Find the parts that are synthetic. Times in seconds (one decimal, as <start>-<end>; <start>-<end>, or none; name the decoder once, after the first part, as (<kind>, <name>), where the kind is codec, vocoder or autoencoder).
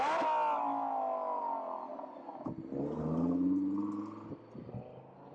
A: none